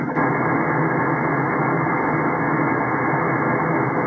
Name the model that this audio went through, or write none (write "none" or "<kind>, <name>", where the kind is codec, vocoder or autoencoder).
none